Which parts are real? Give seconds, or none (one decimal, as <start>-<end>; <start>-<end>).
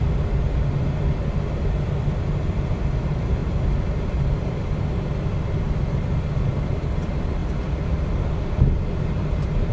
0.0-9.7